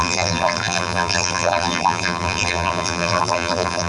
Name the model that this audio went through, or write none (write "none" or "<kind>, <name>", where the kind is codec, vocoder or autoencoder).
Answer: vocoder, BigVGAN v2